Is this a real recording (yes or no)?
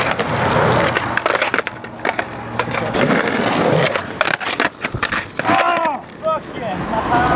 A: yes